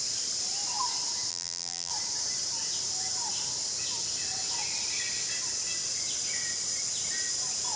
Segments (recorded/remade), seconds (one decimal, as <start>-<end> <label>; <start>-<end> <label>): 0.0-1.3 recorded; 1.3-1.9 remade; 1.9-7.8 recorded